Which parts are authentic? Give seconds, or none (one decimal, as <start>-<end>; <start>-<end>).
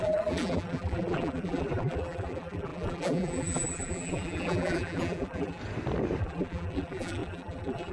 5.6-6.2